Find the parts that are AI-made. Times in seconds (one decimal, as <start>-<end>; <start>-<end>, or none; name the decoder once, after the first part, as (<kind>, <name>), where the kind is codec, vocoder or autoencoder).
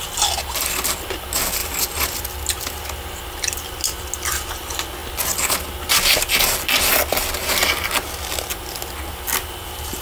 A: 1.6-2.2 (vocoder, BigVGAN v2)